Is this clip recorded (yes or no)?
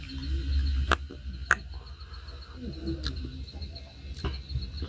yes